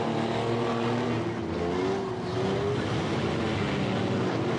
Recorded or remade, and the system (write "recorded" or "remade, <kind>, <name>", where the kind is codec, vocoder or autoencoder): recorded